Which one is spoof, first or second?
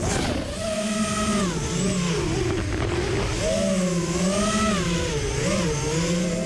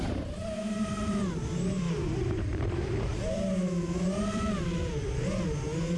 second